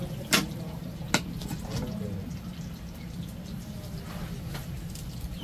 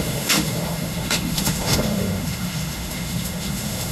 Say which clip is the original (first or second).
first